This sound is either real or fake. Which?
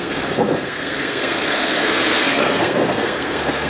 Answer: fake